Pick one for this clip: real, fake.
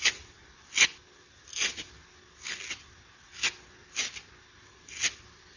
real